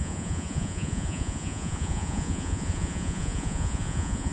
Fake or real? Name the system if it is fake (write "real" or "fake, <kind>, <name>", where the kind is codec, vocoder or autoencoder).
fake, vocoder, Vocos